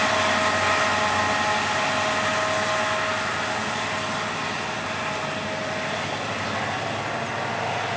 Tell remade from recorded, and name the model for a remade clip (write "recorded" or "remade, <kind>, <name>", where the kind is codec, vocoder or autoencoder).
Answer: recorded